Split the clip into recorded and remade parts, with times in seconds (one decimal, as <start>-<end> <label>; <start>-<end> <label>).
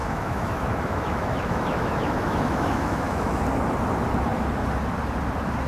0.0-3.4 remade; 3.4-5.7 recorded